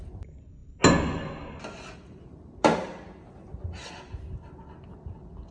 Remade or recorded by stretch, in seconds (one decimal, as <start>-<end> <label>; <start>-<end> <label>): 0.0-5.5 recorded